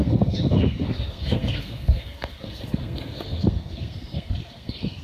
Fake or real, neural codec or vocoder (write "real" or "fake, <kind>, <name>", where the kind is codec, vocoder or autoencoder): fake, codec, SNAC